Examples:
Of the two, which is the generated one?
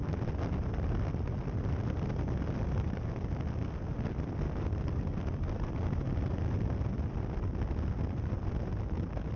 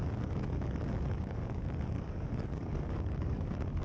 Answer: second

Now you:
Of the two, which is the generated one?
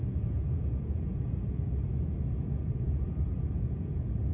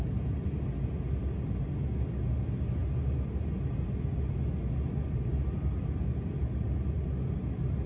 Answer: first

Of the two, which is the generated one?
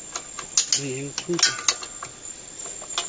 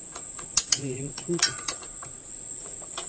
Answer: second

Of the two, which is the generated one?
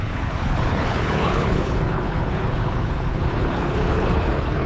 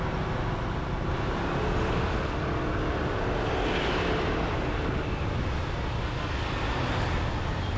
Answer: first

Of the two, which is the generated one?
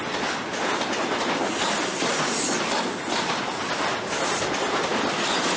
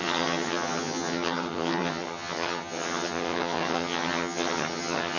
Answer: second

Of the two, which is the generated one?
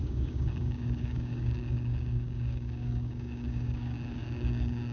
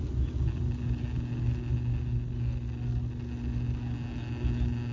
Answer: first